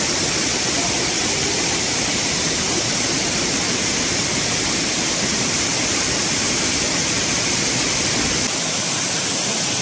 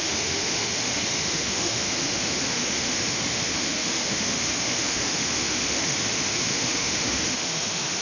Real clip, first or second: first